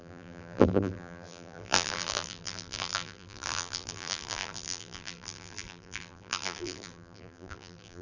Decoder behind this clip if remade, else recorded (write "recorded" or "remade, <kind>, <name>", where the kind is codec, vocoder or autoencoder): remade, vocoder, BigVGAN v2